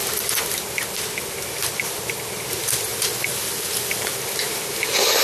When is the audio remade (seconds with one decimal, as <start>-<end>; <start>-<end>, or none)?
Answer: none